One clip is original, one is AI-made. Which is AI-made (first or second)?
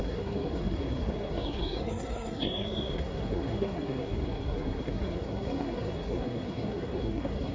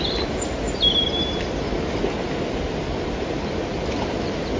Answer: first